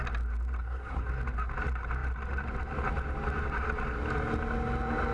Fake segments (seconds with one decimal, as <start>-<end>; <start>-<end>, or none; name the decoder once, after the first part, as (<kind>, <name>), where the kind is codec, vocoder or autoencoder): 0.6-1.1 (codec, SNAC)